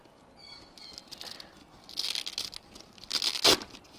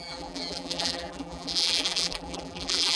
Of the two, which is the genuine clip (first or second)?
first